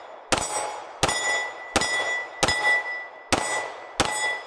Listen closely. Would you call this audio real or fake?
real